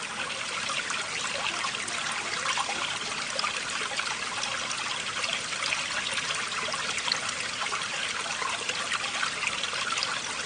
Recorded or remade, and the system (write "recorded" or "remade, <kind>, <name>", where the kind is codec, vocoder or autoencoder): recorded